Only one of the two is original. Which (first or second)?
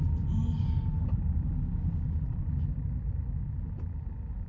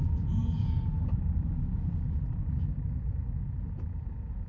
first